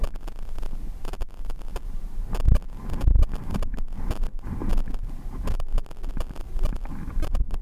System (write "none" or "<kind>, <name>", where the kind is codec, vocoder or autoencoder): none